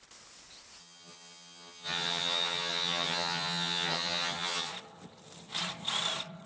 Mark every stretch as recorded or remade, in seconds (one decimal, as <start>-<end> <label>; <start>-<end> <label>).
0.0-0.8 recorded; 0.8-4.7 remade; 4.7-6.5 recorded